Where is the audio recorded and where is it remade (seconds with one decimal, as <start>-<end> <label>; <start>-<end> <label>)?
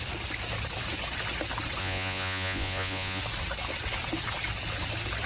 0.0-1.8 recorded; 1.8-3.2 remade; 3.2-5.3 recorded